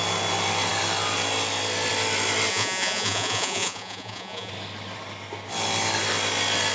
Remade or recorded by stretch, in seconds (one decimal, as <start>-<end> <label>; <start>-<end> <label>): 0.0-2.5 recorded; 2.5-4.5 remade; 4.5-6.7 recorded